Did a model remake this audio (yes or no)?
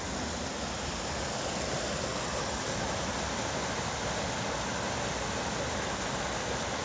no